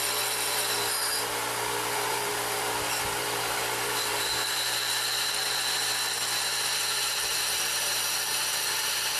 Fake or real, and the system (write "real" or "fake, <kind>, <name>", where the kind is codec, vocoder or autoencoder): fake, vocoder, BigVGAN v2